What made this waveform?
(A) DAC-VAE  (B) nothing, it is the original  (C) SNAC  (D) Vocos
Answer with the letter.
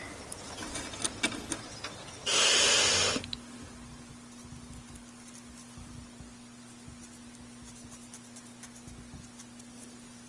B